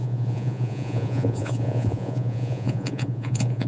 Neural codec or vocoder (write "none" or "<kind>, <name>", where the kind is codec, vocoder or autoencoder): vocoder, Vocos